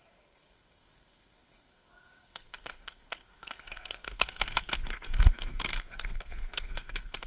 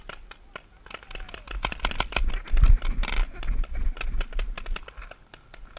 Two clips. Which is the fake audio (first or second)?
first